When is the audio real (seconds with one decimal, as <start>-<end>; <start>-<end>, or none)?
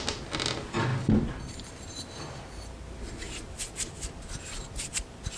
0.0-5.4